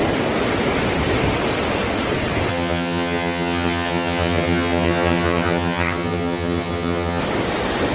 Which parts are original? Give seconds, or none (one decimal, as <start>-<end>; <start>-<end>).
0.0-2.5; 7.2-7.9